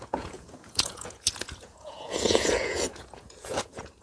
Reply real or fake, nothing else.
fake